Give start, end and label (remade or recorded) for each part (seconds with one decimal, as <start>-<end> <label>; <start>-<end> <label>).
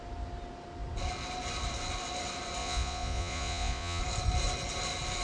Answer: 0.0-2.6 recorded; 2.6-4.0 remade; 4.0-5.2 recorded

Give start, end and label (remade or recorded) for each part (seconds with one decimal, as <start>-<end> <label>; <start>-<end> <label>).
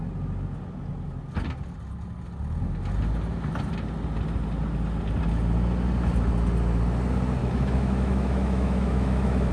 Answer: 0.0-7.4 recorded; 7.4-9.5 remade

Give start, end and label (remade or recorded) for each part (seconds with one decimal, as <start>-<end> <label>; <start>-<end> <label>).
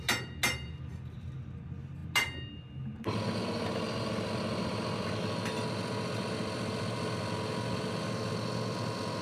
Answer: 0.0-9.2 recorded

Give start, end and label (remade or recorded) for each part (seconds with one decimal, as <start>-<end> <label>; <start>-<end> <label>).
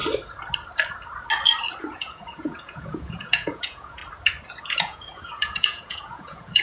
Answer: 0.0-1.8 recorded; 1.8-4.0 remade; 4.0-4.6 recorded; 4.6-6.6 remade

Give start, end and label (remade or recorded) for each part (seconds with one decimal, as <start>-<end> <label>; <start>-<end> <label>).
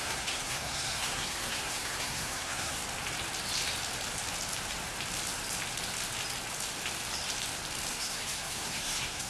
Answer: 0.0-2.8 remade; 2.8-7.9 recorded; 7.9-9.3 remade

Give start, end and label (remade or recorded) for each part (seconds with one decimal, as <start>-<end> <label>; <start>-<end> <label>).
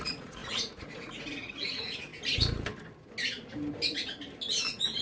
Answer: 0.0-2.1 remade; 2.1-5.0 recorded